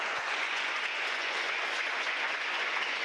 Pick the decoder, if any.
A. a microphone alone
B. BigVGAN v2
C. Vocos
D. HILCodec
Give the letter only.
C